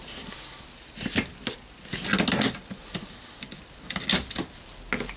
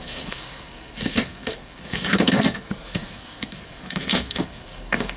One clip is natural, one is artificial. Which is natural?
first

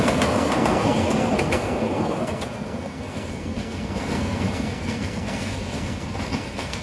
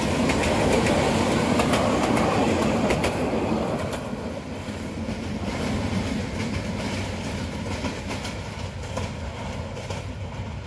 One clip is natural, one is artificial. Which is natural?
second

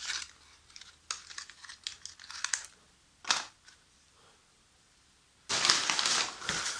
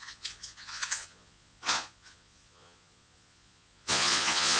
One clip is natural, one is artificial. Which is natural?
first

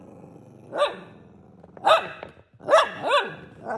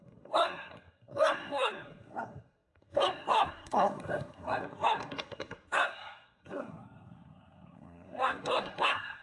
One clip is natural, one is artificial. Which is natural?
first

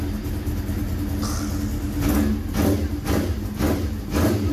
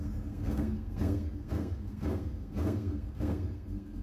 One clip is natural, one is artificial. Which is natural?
first